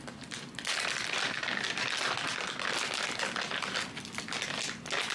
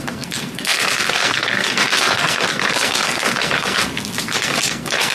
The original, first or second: first